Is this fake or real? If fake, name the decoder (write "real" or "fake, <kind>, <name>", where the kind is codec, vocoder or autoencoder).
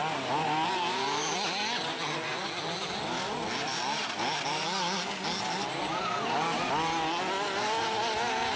real